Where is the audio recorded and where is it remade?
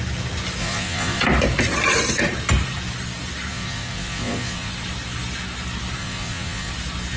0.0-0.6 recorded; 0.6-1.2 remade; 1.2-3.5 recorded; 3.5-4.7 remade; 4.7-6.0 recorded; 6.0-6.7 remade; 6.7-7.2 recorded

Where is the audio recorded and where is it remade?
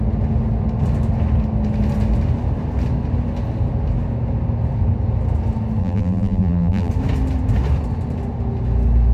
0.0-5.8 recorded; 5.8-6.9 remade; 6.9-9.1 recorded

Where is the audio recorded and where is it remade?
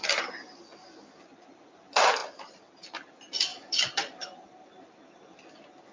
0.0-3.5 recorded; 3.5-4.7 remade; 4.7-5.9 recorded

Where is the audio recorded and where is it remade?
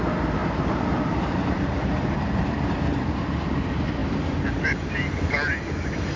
0.0-6.2 remade